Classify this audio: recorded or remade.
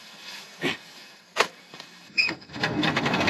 remade